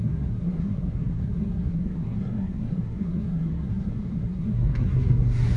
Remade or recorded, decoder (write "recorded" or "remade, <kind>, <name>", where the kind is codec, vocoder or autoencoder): remade, codec, SNAC